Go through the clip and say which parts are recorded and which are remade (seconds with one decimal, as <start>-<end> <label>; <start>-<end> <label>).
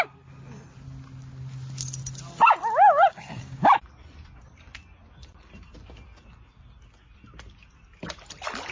0.0-3.1 recorded; 3.1-3.7 remade; 3.7-8.7 recorded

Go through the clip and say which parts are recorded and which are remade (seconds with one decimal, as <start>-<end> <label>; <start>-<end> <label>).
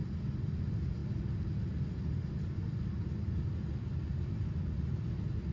0.0-5.5 recorded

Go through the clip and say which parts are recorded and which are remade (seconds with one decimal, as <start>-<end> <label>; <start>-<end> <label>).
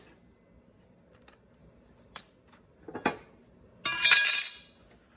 0.0-1.6 recorded; 1.6-2.2 remade; 2.2-5.2 recorded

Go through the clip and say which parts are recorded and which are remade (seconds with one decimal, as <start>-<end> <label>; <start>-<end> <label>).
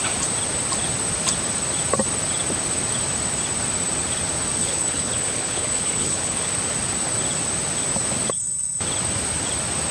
0.0-4.6 recorded; 4.6-6.5 remade; 6.5-9.9 recorded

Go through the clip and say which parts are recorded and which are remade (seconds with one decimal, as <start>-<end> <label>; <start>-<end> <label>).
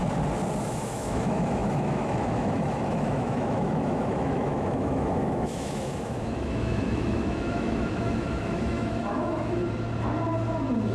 0.0-0.6 recorded; 0.6-9.6 remade; 9.6-10.9 recorded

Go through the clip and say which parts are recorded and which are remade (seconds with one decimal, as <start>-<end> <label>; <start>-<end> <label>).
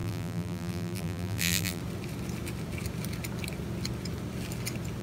0.0-1.8 remade; 1.8-5.0 recorded